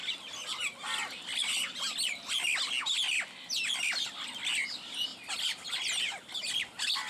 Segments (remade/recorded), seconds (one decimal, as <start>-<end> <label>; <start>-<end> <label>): 0.0-7.1 recorded